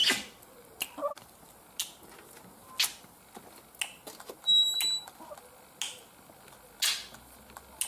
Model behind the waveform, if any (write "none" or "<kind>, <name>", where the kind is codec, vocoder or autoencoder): none